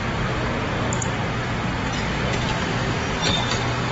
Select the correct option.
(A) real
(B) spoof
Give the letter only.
A